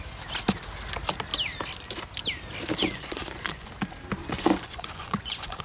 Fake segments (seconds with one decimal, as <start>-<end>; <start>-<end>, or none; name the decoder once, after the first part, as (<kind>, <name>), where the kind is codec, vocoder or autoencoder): 2.8-3.7 (vocoder, Vocos); 4.2-5.6